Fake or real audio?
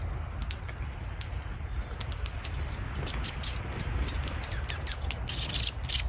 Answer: real